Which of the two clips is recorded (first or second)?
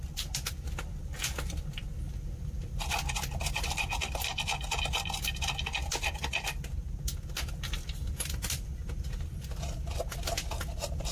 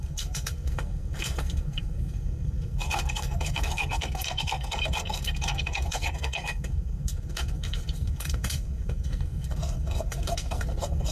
first